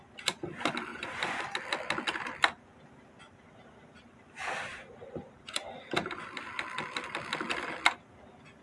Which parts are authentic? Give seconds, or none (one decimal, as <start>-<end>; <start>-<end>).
0.0-0.9; 1.4-8.6